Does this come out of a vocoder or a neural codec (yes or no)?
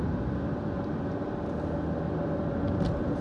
no